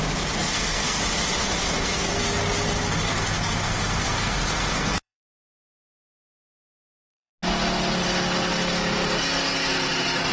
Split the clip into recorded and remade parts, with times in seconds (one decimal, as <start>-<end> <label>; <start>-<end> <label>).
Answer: 0.0-0.5 recorded; 0.5-1.0 remade; 1.0-1.4 recorded; 1.4-2.2 remade; 2.2-3.1 recorded; 3.1-7.3 remade; 7.3-10.3 recorded